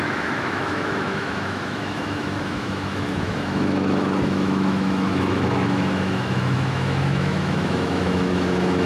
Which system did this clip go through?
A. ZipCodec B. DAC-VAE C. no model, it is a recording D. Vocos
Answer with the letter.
B